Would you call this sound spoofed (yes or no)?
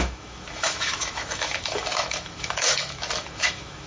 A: yes